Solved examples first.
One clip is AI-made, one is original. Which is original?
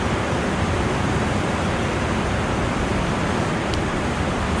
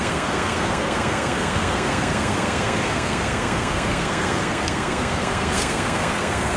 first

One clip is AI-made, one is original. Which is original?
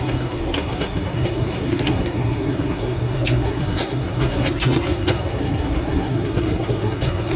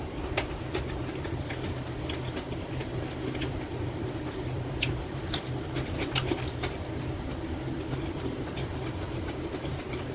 second